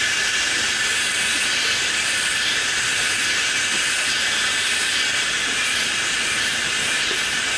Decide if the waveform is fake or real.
real